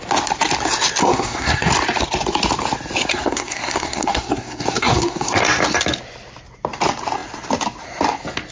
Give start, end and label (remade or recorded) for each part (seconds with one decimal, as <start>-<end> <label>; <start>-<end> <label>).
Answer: 0.0-1.0 recorded; 1.0-1.7 remade; 1.7-3.1 recorded; 3.1-5.4 remade; 5.4-8.5 recorded